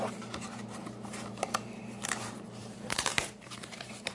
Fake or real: fake